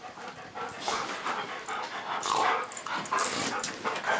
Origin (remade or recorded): recorded